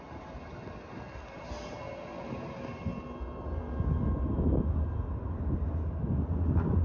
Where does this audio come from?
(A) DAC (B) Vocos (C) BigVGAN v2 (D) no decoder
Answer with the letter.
D